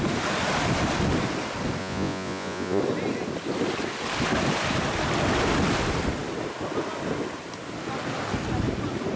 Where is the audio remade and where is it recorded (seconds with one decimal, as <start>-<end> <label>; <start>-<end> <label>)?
0.0-1.8 recorded; 1.8-2.8 remade; 2.8-9.2 recorded